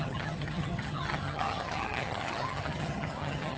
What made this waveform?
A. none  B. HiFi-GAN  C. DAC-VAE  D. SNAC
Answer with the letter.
B